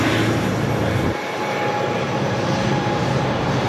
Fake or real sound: fake